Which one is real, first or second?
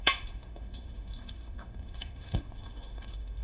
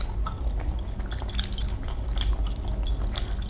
second